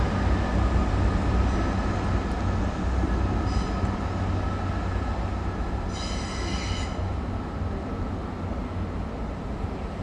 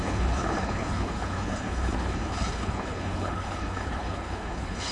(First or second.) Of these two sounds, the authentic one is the first